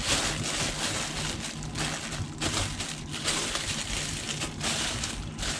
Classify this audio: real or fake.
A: real